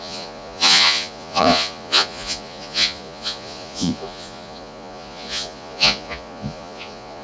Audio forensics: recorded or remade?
remade